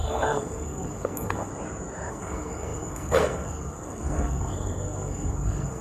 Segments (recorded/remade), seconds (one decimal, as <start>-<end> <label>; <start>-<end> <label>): 0.0-1.5 remade; 1.5-2.1 recorded; 2.1-5.8 remade